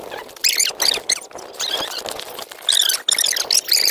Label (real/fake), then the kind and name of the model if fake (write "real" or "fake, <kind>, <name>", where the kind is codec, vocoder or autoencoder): real